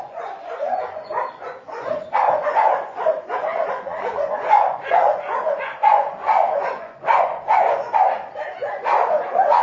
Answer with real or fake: fake